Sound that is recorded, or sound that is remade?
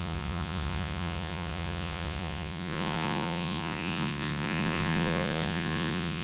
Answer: remade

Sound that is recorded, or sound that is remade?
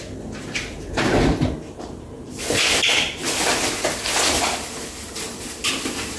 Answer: recorded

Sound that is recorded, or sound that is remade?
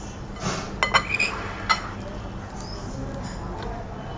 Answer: recorded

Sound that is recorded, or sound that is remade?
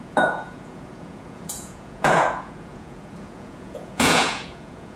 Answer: remade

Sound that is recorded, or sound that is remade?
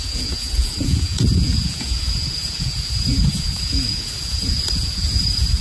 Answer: remade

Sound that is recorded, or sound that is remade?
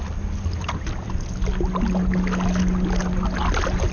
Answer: recorded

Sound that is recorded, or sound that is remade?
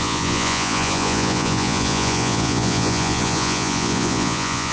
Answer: remade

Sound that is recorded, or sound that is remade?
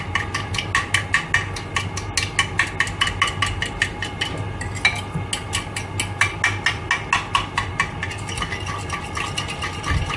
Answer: recorded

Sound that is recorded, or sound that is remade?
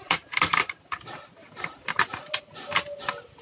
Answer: recorded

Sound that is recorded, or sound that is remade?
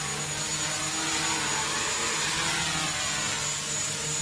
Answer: recorded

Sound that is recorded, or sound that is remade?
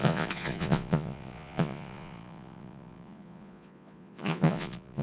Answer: remade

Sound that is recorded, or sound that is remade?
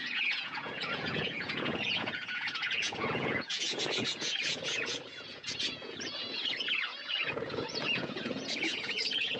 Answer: remade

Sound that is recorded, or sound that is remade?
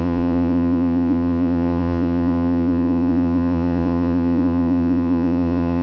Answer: remade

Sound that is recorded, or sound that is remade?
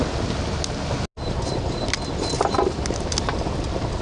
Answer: recorded